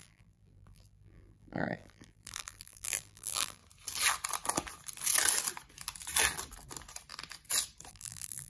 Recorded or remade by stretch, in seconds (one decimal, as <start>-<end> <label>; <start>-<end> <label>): 0.0-3.6 remade; 3.6-7.9 recorded; 7.9-8.5 remade